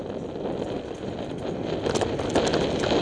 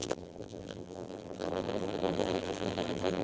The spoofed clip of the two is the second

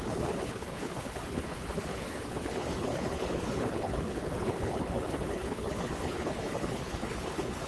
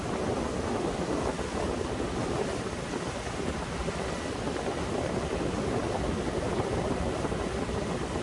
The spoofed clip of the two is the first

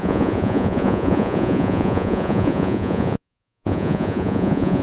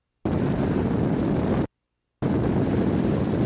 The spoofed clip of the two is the first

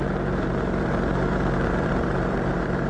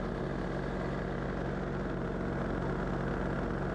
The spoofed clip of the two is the first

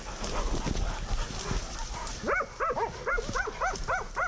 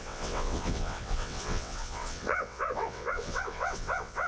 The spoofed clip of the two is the second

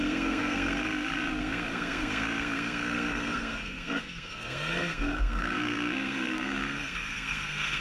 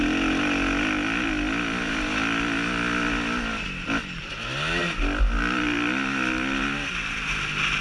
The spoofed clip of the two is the first